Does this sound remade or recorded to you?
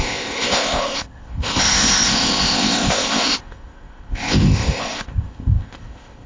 remade